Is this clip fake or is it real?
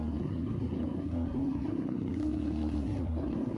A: fake